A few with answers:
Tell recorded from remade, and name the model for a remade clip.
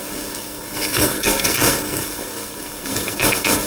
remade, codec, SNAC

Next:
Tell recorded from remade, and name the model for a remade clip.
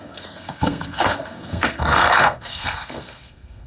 remade, codec, SNAC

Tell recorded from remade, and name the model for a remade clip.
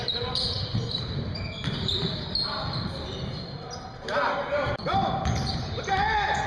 recorded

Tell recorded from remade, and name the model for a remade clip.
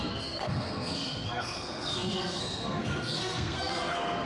remade, codec, SNAC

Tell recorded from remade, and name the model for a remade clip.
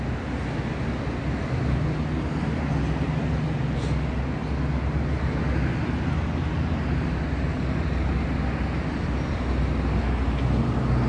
recorded